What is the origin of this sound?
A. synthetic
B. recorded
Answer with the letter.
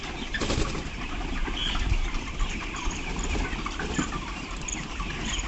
B